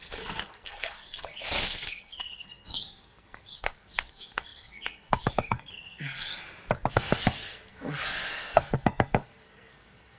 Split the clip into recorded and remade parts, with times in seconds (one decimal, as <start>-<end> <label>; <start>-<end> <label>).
0.0-6.3 remade; 6.3-6.9 recorded; 6.9-10.2 remade